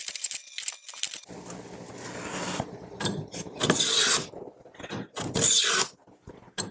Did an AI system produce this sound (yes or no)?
no